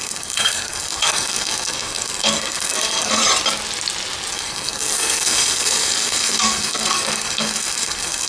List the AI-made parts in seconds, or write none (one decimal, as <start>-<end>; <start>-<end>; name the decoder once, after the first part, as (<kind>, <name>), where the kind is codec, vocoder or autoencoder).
0.0-3.2 (codec, SNAC); 4.3-8.3